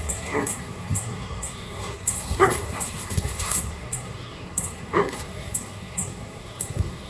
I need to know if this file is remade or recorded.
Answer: remade